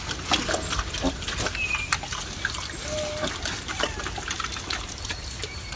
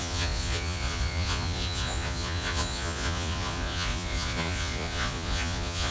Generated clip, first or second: second